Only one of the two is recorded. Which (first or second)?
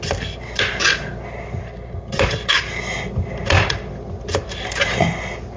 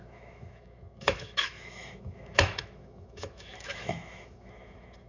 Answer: first